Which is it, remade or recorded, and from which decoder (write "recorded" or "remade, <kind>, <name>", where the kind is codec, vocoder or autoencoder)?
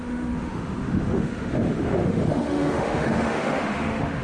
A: remade, autoencoder, DAC-VAE